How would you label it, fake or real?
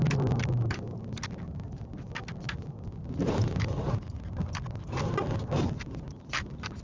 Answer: real